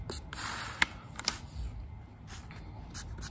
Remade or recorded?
recorded